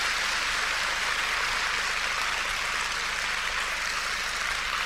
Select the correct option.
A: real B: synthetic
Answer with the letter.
A